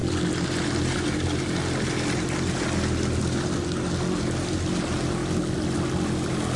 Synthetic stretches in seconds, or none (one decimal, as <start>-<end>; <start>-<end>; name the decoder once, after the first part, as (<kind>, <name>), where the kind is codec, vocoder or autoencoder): none